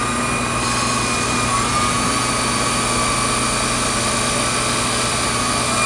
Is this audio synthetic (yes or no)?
no